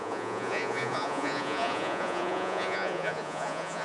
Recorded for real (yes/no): no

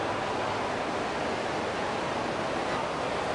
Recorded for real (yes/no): yes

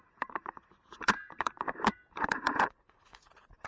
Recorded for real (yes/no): no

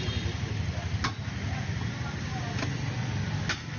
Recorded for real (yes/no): yes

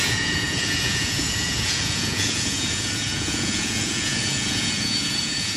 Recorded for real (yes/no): no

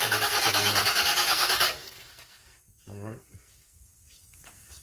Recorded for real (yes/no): no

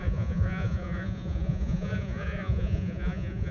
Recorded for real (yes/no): no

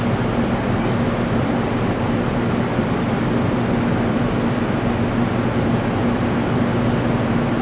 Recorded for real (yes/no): yes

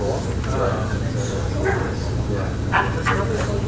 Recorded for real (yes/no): yes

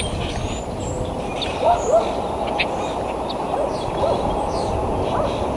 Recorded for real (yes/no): yes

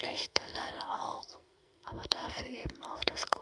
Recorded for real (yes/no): no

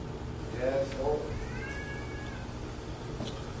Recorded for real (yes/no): yes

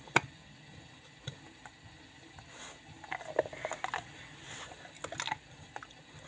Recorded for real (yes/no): yes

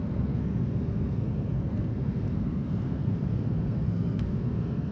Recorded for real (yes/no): no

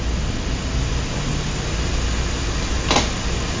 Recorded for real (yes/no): yes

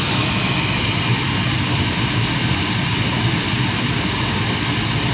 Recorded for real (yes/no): yes